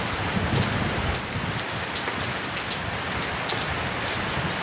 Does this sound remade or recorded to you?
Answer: recorded